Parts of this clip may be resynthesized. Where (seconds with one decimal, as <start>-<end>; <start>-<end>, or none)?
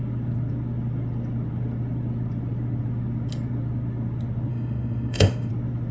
4.5-5.5